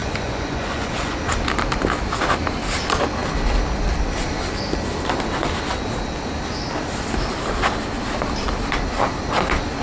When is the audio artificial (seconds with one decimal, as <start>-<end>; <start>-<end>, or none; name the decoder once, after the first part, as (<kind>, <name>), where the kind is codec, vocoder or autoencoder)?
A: 0.0-1.2 (vocoder, Vocos)